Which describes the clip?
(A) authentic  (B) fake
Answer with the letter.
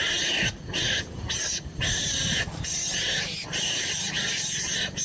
A